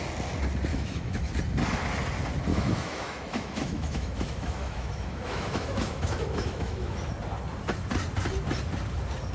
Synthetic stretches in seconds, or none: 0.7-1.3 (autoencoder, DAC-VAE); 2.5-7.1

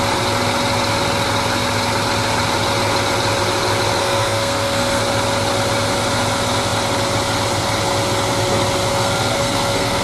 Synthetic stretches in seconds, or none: 4.0-5.0 (codec, SNAC); 8.9-10.0

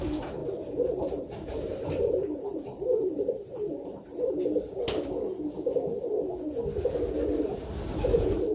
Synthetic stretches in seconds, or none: 0.4-4.3 (vocoder, BigVGAN v2)

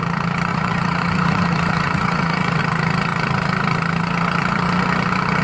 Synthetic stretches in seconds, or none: 0.5-2.6 (vocoder, Vocos)

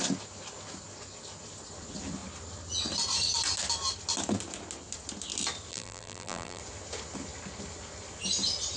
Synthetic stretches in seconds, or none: 5.7-6.6 (vocoder, BigVGAN v2)